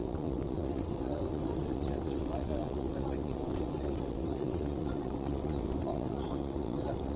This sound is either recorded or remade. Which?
remade